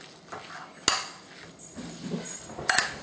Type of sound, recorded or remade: recorded